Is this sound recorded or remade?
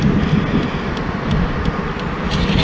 recorded